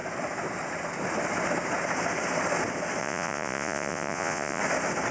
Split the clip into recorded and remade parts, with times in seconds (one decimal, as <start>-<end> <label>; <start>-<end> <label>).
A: 0.0-3.0 recorded; 3.0-4.6 remade; 4.6-5.1 recorded